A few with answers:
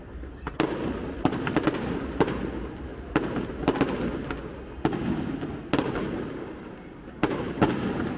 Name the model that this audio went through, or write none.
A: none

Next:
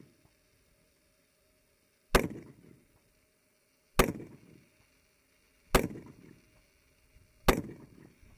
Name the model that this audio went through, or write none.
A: none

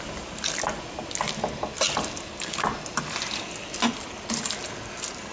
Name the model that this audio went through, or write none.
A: none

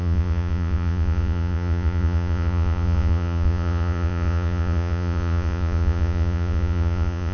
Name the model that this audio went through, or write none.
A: vocoder, Vocos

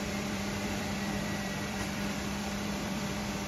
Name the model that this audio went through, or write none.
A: vocoder, BigVGAN v2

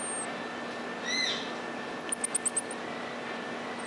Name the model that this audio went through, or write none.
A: none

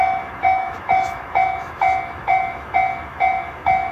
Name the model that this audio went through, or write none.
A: autoencoder, DAC-VAE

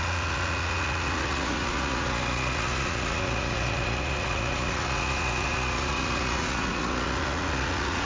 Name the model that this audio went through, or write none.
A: vocoder, Vocos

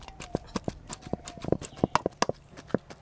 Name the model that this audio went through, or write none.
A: none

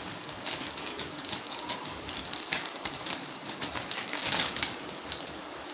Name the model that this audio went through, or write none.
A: codec, DAC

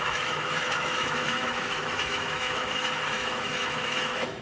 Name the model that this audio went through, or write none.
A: autoencoder, DAC-VAE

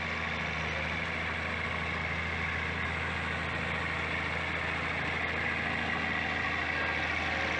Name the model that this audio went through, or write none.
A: none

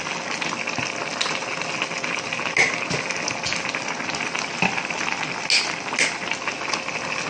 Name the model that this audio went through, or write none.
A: none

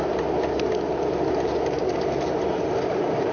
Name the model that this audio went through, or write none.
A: none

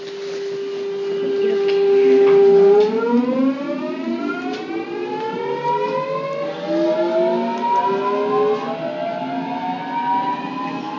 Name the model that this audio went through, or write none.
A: none